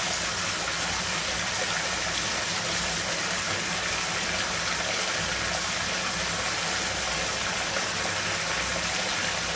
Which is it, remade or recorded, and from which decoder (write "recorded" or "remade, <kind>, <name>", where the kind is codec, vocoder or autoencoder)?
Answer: recorded